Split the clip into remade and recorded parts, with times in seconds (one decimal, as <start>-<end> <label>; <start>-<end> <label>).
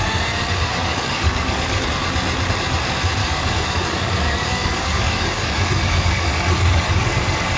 0.0-0.8 recorded; 0.8-1.8 remade; 1.8-3.2 recorded; 3.2-7.6 remade